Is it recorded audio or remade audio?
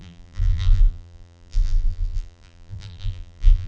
remade